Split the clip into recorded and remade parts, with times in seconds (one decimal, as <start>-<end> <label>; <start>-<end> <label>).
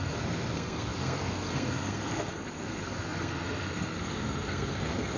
0.0-5.2 remade